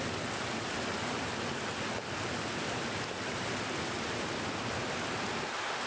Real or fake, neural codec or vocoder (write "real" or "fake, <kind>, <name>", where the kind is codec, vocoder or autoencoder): real